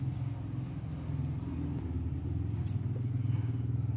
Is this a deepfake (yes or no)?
no